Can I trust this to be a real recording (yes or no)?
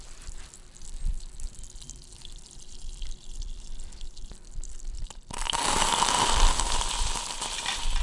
no